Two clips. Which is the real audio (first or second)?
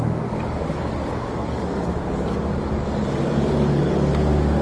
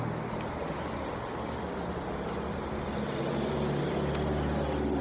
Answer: second